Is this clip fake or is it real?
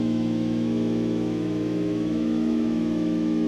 fake